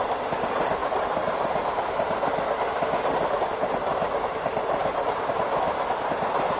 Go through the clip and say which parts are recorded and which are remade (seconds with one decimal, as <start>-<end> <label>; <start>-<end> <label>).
0.0-6.6 recorded